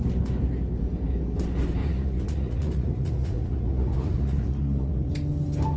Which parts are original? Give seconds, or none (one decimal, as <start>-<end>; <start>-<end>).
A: 0.0-1.8; 5.1-5.8